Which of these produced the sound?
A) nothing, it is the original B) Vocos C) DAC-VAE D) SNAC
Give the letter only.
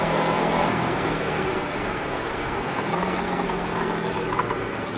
D